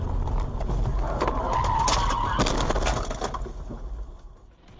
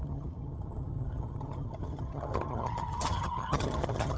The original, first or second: first